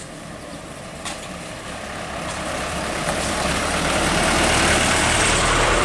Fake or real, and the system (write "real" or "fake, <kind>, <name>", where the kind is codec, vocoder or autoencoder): fake, vocoder, BigVGAN v2